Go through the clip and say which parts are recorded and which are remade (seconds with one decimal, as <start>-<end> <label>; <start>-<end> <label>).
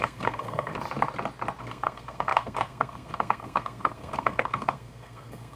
0.0-0.7 remade; 0.7-1.6 recorded; 1.6-5.6 remade